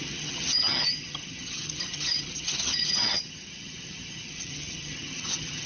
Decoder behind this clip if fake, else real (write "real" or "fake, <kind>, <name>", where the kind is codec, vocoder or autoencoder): fake, vocoder, HiFi-GAN